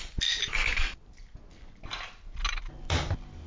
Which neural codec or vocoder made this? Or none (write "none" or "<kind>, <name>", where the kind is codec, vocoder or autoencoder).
none